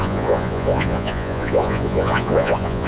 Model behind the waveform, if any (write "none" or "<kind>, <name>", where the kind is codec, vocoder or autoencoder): vocoder, Vocos